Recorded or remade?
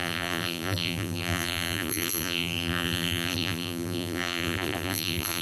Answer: remade